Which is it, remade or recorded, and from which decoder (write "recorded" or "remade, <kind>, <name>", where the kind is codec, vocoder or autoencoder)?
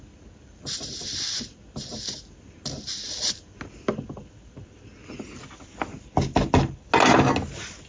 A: recorded